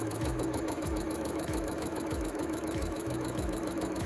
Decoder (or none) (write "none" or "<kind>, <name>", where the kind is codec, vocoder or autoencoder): autoencoder, DAC-VAE